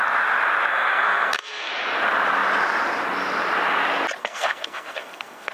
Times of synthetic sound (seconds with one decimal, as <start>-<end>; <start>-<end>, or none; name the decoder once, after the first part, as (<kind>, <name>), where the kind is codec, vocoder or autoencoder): 0.7-1.7 (codec, SNAC); 4.2-5.5

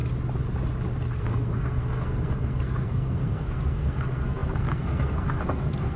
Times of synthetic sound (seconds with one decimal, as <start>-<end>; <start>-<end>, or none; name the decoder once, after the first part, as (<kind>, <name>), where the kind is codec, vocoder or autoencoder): 1.2-6.0 (codec, SNAC)

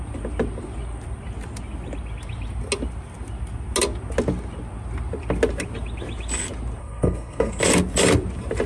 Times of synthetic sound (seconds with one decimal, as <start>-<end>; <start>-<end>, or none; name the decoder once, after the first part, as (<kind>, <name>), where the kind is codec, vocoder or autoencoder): 6.8-7.6 (codec, SNAC)

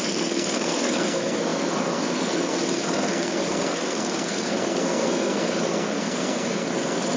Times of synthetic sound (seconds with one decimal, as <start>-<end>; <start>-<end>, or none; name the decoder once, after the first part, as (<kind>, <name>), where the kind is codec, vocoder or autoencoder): 0.0-7.2 (codec, SNAC)